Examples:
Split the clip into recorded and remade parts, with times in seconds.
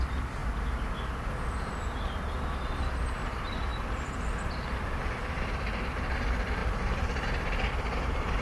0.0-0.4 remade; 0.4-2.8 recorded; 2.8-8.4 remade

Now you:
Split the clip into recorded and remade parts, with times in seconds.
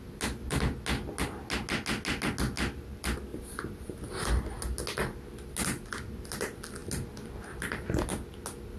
0.0-3.3 recorded; 3.3-4.0 remade; 4.0-8.8 recorded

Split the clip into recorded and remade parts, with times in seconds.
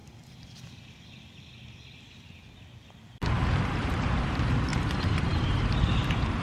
0.0-3.3 recorded; 3.3-6.4 remade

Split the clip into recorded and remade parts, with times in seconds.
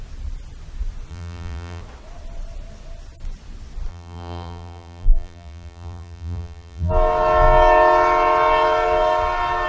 0.0-1.1 recorded; 1.1-1.8 remade; 1.8-3.9 recorded; 3.9-6.9 remade; 6.9-9.7 recorded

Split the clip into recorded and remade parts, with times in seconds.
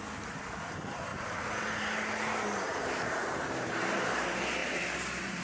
0.0-1.1 recorded; 1.1-4.1 remade; 4.1-5.4 recorded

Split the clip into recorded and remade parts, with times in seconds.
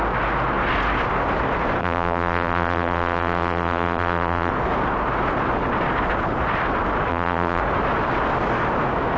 0.0-1.8 recorded; 1.8-4.5 remade; 4.5-7.1 recorded; 7.1-7.6 remade; 7.6-9.2 recorded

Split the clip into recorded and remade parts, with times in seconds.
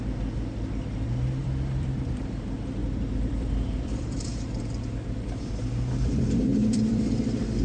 0.0-1.4 recorded; 1.4-2.2 remade; 2.2-2.8 recorded; 2.8-5.5 remade; 5.5-6.5 recorded; 6.5-7.1 remade; 7.1-7.6 recorded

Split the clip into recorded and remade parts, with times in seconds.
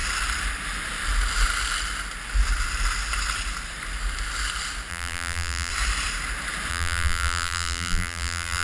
0.0-4.9 recorded; 4.9-5.7 remade; 5.7-6.7 recorded; 6.7-8.6 remade